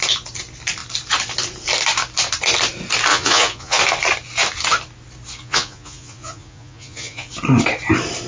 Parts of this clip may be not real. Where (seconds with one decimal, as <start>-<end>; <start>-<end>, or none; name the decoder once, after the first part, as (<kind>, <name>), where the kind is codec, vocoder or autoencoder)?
3.1-3.8 (vocoder, Vocos); 5.4-7.3